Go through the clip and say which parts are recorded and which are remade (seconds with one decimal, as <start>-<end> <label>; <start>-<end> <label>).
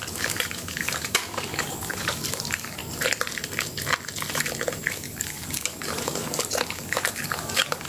0.0-2.8 remade; 2.8-4.9 recorded; 4.9-7.9 remade